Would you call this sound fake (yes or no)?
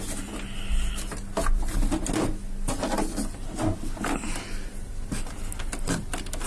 no